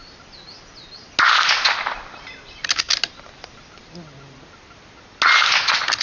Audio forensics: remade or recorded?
recorded